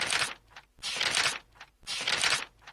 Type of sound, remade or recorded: recorded